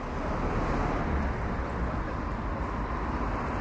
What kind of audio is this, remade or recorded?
recorded